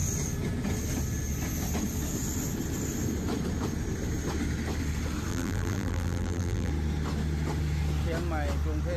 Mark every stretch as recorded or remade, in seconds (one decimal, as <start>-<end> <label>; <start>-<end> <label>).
0.0-5.3 recorded; 5.3-6.7 remade; 6.7-9.0 recorded